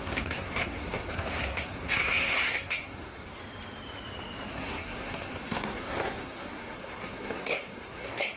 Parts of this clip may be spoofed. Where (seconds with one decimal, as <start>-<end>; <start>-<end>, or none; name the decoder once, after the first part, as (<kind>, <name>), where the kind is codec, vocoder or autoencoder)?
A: 0.0-3.4 (codec, SNAC); 4.5-8.4